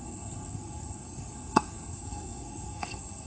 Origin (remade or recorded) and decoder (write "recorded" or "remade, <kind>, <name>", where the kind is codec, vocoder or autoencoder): remade, codec, SNAC